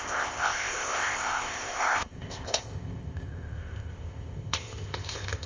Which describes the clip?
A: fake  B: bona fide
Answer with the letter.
A